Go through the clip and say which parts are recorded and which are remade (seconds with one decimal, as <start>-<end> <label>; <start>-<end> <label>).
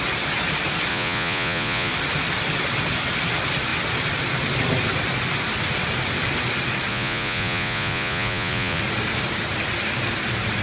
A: 0.0-0.9 recorded; 0.9-1.9 remade; 1.9-6.9 recorded; 6.9-8.8 remade; 8.8-10.6 recorded